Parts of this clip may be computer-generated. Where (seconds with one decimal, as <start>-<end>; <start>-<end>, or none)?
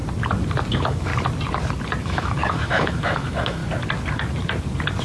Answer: 0.7-1.1; 2.0-3.6